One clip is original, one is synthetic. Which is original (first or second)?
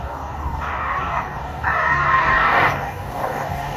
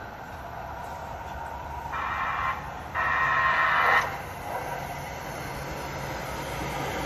second